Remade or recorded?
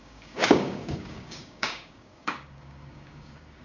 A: remade